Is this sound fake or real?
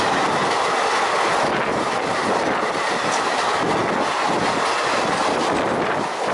real